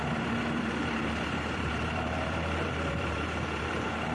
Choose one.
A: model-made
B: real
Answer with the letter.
A